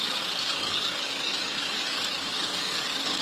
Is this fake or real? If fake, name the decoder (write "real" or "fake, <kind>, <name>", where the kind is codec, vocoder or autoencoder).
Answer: fake, codec, DAC